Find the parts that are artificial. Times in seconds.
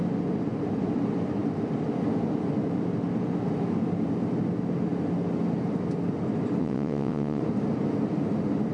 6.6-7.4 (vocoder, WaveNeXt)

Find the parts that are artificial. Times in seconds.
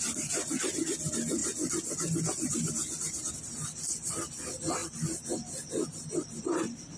none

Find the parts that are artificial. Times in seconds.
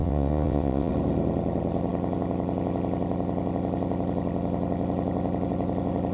0.0-0.9 (vocoder, WaveNeXt)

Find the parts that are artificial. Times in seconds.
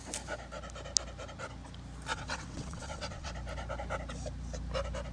2.1-3.3 (vocoder, WaveNeXt)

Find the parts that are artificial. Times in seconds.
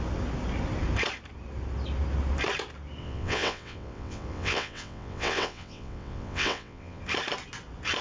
3.0-7.0 (vocoder, WaveNeXt)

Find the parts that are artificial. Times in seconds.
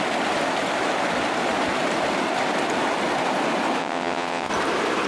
3.8-4.5 (vocoder, WaveNeXt)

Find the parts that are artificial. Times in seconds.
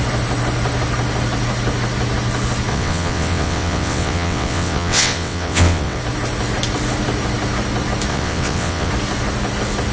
2.7-6.0 (vocoder, WaveNeXt); 8.1-8.9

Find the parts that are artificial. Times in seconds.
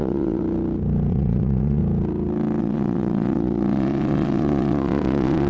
0.0-0.4 (vocoder, WaveNeXt); 1.1-1.8; 2.6-5.5